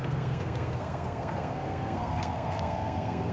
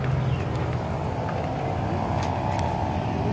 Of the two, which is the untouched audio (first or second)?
second